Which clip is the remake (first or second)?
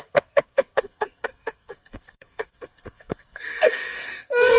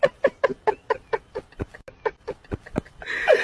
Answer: first